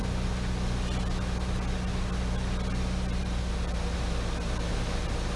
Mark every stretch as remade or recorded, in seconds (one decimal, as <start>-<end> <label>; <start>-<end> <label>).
0.0-5.4 recorded